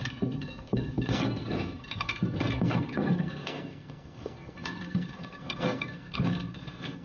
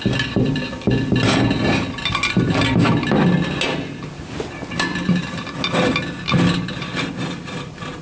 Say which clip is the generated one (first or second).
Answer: first